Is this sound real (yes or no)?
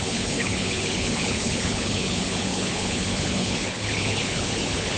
no